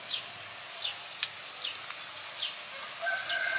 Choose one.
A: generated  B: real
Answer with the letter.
B